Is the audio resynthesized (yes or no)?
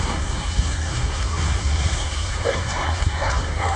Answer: yes